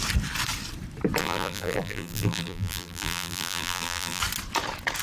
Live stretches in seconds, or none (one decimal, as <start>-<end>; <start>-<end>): 0.0-1.2; 4.2-5.0